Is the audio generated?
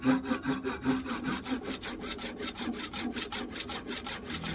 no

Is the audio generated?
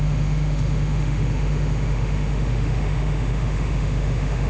yes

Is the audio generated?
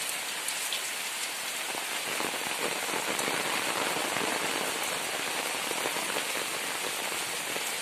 no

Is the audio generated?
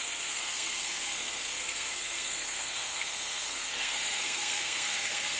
yes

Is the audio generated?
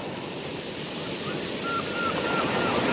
no